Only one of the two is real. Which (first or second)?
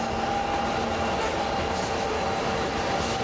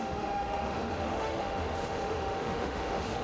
first